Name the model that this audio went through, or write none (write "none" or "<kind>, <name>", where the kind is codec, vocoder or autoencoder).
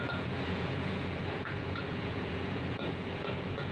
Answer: vocoder, Vocos